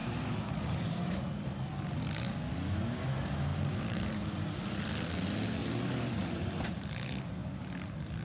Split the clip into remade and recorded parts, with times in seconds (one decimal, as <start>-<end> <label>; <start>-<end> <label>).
0.0-1.1 remade; 1.1-3.5 recorded; 3.5-4.8 remade; 4.8-5.6 recorded; 5.6-6.7 remade; 6.7-8.2 recorded